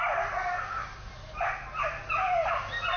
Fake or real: real